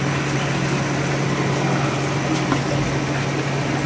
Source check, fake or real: real